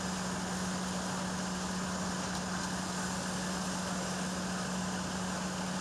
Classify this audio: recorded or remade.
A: recorded